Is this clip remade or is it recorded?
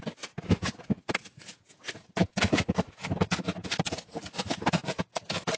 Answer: remade